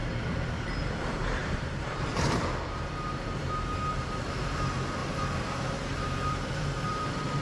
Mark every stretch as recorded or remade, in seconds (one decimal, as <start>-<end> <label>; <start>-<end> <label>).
0.0-1.0 recorded; 1.0-7.4 remade